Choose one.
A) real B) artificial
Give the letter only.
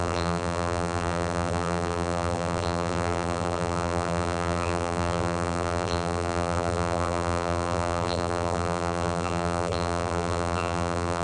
B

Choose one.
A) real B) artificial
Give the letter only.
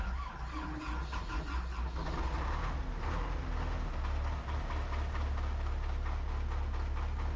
A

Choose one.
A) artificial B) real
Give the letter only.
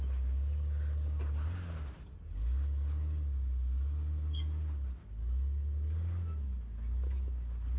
B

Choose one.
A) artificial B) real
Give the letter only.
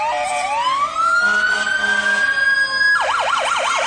B